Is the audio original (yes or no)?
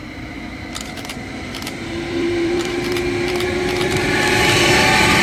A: no